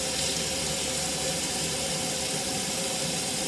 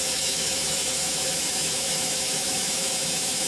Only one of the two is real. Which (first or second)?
first